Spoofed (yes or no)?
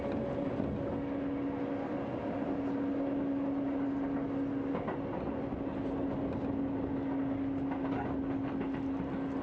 no